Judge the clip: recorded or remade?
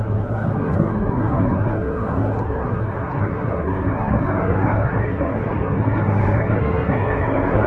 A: remade